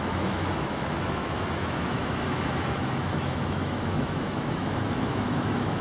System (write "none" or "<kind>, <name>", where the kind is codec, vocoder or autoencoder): autoencoder, DAC-VAE